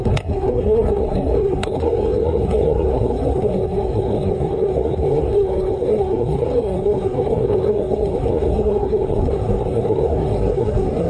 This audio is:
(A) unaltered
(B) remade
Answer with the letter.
B